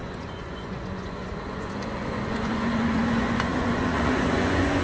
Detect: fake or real fake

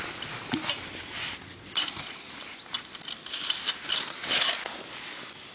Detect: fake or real real